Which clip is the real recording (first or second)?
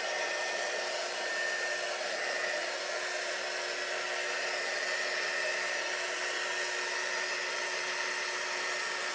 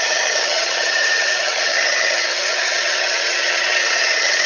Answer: first